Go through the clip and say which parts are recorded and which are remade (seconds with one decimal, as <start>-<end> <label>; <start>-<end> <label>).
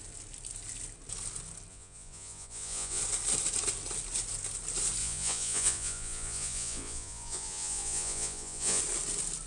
0.0-1.7 recorded; 1.7-3.0 remade; 3.0-5.0 recorded; 5.0-8.8 remade; 8.8-9.5 recorded